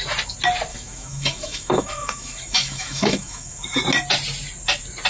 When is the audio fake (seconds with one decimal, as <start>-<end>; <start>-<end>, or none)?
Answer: 0.7-3.8